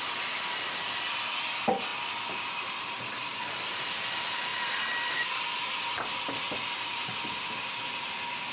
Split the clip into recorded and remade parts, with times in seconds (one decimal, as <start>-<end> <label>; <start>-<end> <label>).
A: 0.0-8.5 recorded